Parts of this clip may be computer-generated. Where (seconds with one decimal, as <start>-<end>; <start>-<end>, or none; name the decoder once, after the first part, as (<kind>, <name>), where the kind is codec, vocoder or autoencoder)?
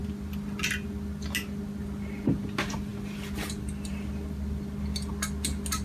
none